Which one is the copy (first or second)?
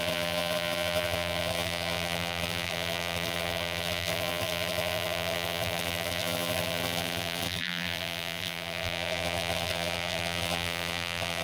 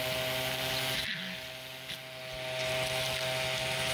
first